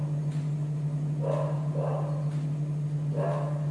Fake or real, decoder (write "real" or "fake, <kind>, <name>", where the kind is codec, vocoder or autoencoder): real